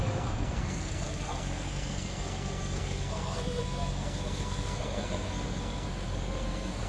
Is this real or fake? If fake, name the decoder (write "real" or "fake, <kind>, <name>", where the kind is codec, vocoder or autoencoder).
fake, codec, SNAC